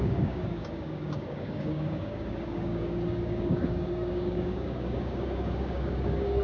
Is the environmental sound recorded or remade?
remade